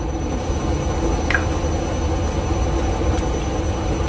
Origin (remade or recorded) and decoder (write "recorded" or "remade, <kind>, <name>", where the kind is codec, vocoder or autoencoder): recorded